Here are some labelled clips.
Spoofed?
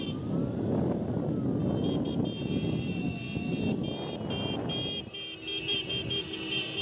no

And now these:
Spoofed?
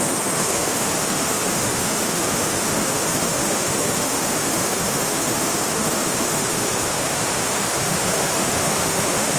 yes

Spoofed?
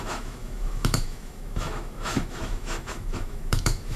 yes